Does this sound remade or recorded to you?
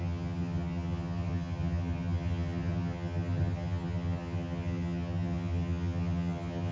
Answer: remade